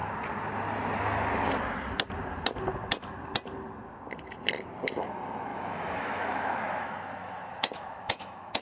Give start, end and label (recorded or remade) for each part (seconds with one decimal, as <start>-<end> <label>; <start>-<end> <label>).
0.0-5.5 recorded; 5.5-8.6 remade